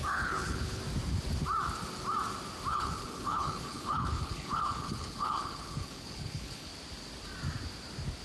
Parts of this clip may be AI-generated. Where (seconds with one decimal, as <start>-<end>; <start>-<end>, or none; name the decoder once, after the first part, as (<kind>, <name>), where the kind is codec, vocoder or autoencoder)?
0.0-0.8 (codec, HILCodec); 2.7-6.7